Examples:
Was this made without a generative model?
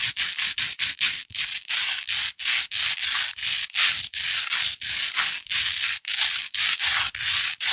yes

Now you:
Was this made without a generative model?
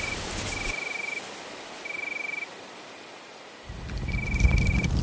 yes